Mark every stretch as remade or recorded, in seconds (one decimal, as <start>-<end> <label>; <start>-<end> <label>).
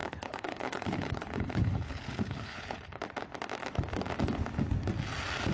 0.0-3.0 remade; 3.0-5.5 recorded